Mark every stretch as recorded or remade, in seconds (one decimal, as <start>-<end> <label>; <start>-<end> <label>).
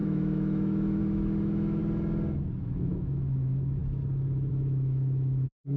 0.0-1.8 remade; 1.8-2.6 recorded; 2.6-3.8 remade; 3.8-4.5 recorded; 4.5-5.8 remade